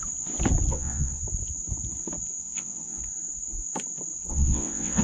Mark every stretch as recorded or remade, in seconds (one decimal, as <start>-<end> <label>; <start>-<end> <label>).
0.0-0.7 recorded; 0.7-1.2 remade; 1.2-2.4 recorded; 2.4-3.0 remade; 3.0-4.3 recorded; 4.3-5.0 remade